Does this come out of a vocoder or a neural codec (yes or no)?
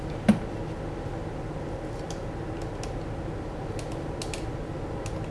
no